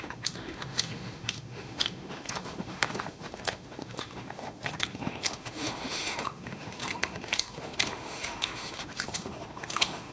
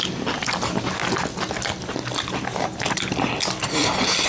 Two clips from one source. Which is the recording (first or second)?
second